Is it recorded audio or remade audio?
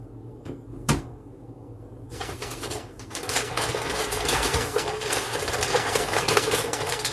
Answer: remade